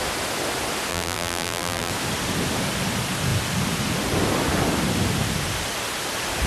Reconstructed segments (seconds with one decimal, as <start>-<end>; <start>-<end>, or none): 0.9-1.9